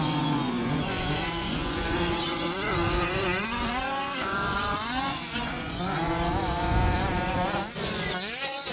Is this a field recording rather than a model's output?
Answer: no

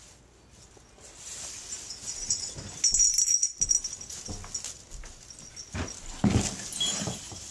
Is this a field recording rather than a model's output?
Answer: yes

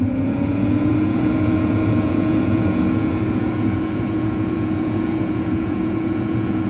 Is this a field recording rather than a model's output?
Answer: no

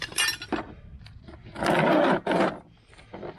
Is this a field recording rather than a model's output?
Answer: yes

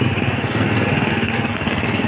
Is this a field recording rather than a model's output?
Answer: no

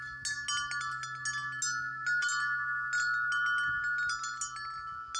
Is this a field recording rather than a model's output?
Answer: yes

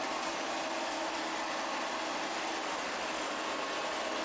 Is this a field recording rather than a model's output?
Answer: yes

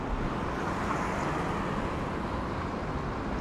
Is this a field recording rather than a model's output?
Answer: yes